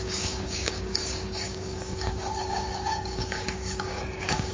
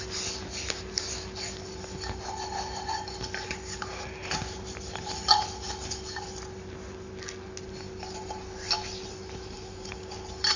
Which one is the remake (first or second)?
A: first